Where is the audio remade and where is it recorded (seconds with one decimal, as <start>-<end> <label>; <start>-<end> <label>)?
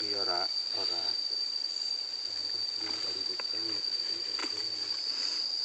0.0-2.4 remade; 2.4-3.0 recorded; 3.0-5.6 remade